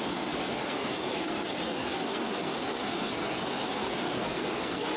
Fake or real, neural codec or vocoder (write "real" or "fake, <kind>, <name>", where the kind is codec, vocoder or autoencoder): fake, codec, SNAC